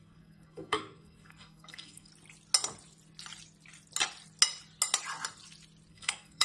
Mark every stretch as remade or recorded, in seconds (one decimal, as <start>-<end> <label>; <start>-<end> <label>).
0.0-2.1 remade; 2.1-5.9 recorded; 5.9-6.4 remade

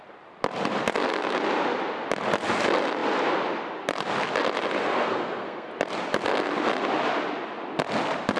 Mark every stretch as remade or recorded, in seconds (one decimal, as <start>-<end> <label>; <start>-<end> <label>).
0.0-4.8 recorded; 4.8-5.7 remade; 5.7-8.4 recorded